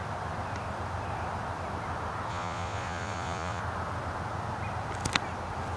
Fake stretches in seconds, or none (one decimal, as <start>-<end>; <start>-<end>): 2.3-3.6